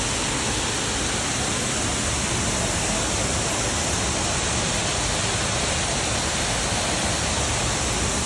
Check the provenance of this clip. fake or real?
real